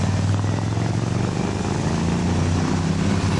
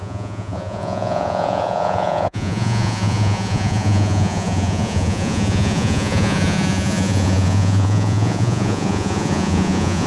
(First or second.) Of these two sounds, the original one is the first